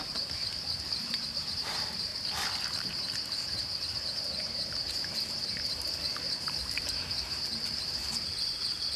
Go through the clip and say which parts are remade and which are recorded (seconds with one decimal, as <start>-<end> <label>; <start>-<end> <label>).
0.0-2.1 remade; 2.1-2.6 recorded; 2.6-9.0 remade